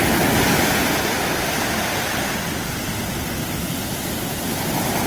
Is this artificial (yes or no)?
no